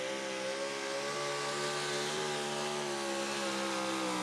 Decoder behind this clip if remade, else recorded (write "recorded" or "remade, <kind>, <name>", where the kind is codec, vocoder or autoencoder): recorded